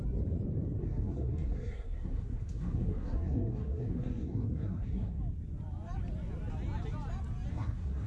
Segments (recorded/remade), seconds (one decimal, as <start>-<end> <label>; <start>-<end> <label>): 0.0-0.8 recorded; 0.8-5.2 remade; 5.2-7.5 recorded; 7.5-8.1 remade